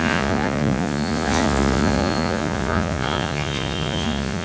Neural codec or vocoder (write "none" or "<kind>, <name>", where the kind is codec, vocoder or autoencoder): vocoder, Vocos